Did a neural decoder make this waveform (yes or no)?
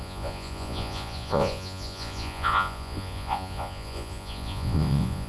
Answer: yes